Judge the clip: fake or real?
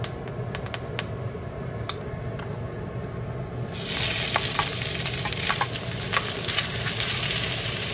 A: real